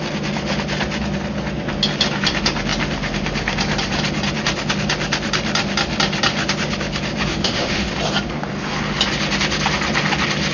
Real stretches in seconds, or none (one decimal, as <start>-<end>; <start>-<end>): 0.0-7.3; 7.9-10.5